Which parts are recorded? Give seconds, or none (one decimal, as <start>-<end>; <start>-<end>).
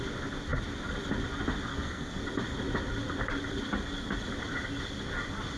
0.0-1.7; 2.2-5.6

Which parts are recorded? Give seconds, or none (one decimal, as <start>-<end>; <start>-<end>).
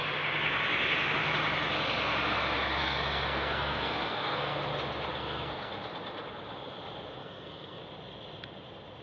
0.0-2.8; 4.6-5.1; 5.7-7.2; 7.8-9.0